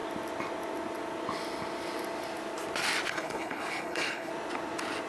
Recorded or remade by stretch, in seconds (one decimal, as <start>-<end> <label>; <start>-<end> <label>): 0.0-3.1 recorded; 3.1-4.3 remade; 4.3-5.1 recorded